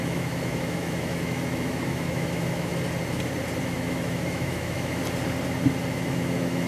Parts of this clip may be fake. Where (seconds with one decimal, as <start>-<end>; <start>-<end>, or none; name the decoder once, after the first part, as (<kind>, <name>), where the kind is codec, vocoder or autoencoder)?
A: 0.0-2.7 (autoencoder, DAC-VAE); 3.6-5.0; 5.9-6.7